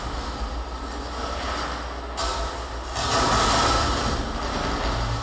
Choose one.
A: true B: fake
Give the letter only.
A